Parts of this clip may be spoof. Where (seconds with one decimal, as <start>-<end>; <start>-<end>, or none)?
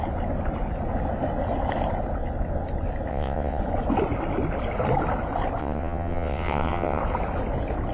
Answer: 3.1-3.6; 5.6-7.0